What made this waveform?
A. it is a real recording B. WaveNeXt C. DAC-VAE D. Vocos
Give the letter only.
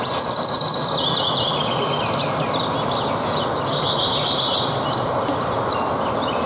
A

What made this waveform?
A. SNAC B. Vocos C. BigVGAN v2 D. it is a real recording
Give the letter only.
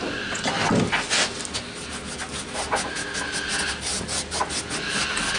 D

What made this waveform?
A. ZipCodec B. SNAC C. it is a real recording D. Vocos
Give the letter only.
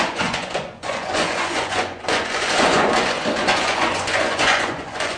D